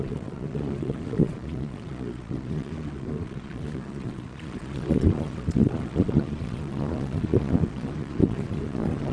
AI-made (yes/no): yes